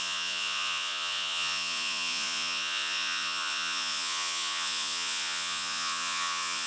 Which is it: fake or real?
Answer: fake